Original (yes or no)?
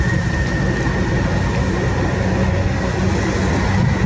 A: yes